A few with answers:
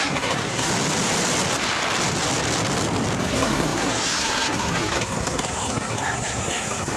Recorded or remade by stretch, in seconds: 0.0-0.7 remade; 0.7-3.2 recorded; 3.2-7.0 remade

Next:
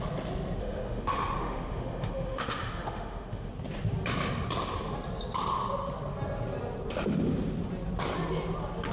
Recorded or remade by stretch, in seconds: 0.0-0.6 recorded; 0.6-3.5 remade; 3.5-8.9 recorded

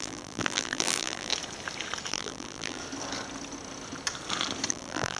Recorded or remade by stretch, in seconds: 0.0-1.3 remade; 1.3-2.1 recorded; 2.1-2.8 remade; 2.8-4.7 recorded; 4.7-5.2 remade